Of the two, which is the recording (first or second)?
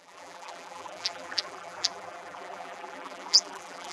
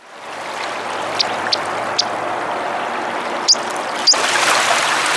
second